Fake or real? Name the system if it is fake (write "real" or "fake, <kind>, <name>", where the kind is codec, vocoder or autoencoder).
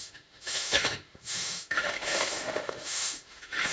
fake, autoencoder, DAC-VAE